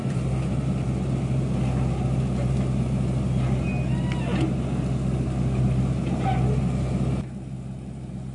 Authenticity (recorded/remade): recorded